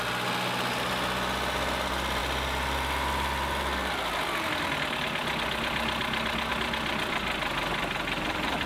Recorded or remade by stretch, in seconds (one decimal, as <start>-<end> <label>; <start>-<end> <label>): 0.0-8.7 recorded